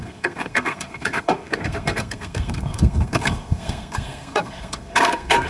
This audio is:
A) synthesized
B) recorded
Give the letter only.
A